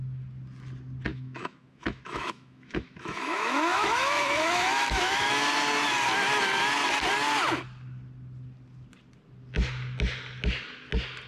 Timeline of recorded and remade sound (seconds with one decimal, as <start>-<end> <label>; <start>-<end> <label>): 0.0-1.1 recorded; 1.1-5.3 remade; 5.3-11.3 recorded